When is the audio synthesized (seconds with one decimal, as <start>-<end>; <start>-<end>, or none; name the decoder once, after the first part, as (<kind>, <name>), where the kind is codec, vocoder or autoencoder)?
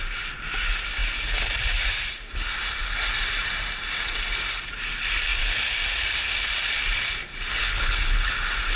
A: 7.6-8.3 (codec, HILCodec)